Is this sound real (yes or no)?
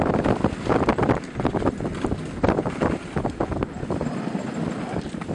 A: yes